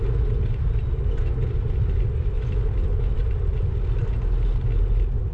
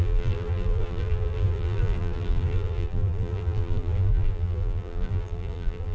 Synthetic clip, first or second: second